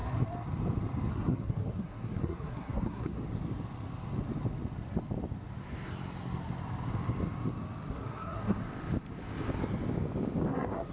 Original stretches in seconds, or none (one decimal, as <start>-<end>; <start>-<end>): 0.0-1.1; 3.2-7.9; 8.6-10.5